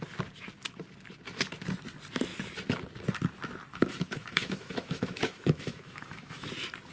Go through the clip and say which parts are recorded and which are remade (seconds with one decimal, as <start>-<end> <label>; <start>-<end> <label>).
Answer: 0.0-3.7 recorded; 3.7-6.5 remade; 6.5-6.9 recorded